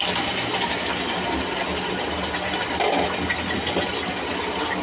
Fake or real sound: real